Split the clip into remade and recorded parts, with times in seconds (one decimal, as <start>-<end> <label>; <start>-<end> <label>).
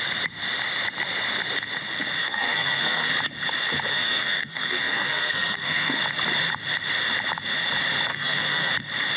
0.0-2.2 recorded; 2.2-3.1 remade; 3.1-3.9 recorded; 3.9-6.0 remade; 6.0-8.1 recorded; 8.1-8.7 remade; 8.7-9.2 recorded